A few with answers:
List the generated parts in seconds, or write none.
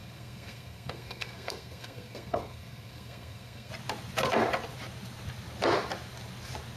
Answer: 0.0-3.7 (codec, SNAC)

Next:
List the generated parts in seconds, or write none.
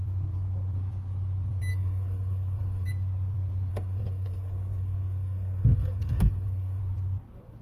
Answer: 1.7-2.9 (codec, SNAC); 3.7-6.8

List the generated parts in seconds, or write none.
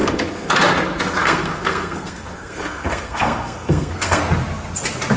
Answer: 0.0-0.5 (codec, SNAC); 1.2-4.2